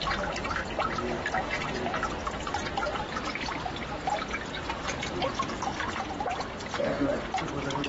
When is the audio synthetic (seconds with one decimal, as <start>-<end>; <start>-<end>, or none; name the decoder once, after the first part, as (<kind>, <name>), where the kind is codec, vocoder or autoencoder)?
none